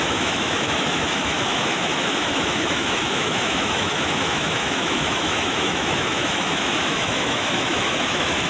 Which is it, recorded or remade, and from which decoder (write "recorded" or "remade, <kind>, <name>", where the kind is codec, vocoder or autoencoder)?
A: remade, autoencoder, DAC-VAE